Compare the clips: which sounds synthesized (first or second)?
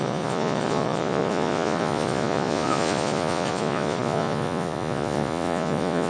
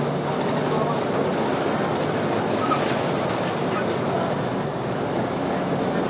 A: first